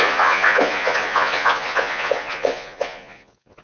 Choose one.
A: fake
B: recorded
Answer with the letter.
A